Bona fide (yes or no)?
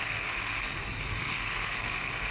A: no